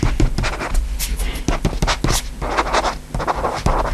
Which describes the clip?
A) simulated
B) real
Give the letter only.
B